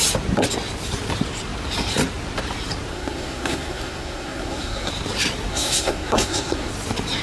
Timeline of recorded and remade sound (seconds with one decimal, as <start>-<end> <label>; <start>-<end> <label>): 0.0-2.9 recorded; 2.9-4.9 remade; 4.9-5.5 recorded; 5.5-6.7 remade; 6.7-7.2 recorded